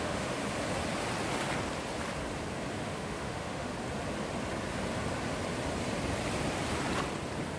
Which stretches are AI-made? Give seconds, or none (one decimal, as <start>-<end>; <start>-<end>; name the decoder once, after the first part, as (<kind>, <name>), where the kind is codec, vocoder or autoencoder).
0.0-0.4 (autoencoder, DAC-VAE); 2.7-3.7